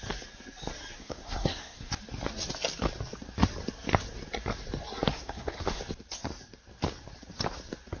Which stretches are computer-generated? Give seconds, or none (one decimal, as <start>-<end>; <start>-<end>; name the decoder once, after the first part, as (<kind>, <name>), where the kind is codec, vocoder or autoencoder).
1.0-1.9 (codec, SNAC); 5.1-5.8